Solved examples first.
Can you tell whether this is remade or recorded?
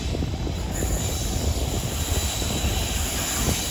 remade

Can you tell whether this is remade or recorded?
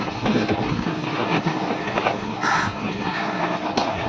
remade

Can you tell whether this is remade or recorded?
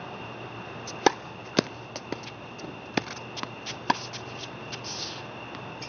recorded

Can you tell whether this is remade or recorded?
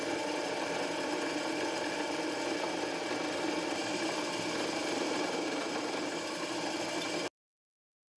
recorded